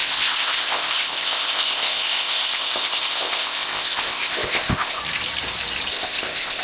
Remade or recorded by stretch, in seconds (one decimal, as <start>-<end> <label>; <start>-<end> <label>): 0.0-5.0 remade; 5.0-5.9 recorded; 5.9-6.6 remade